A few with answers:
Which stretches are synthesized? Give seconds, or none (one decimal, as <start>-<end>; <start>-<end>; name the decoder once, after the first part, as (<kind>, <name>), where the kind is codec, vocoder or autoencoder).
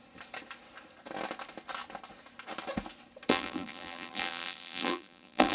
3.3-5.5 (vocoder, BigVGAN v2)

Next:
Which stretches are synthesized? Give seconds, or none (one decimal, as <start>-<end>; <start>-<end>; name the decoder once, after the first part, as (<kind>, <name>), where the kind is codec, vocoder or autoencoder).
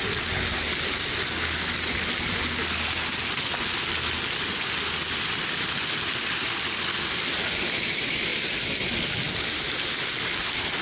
none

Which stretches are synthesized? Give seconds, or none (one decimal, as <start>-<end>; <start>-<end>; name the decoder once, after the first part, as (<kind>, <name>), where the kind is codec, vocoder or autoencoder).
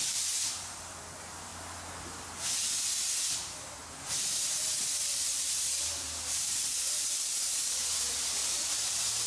0.0-1.5 (vocoder, BigVGAN v2); 4.2-9.3